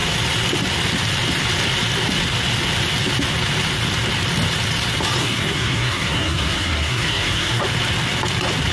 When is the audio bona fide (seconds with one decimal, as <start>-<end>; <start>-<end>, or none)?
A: 0.0-5.2; 7.6-8.7